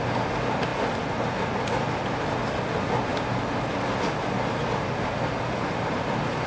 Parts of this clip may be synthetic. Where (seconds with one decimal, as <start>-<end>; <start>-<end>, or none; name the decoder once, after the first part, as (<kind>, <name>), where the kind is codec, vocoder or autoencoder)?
none